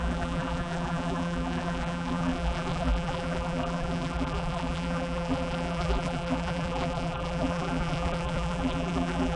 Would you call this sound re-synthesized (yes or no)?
yes